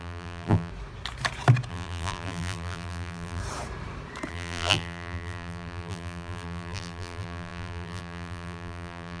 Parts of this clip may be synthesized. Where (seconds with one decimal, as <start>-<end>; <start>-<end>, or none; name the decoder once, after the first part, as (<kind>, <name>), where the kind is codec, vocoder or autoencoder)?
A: 0.0-0.7 (vocoder, BigVGAN v2); 1.7-3.4; 4.3-9.2